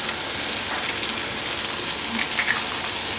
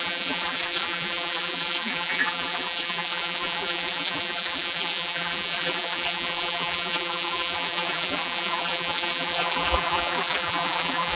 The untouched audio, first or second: first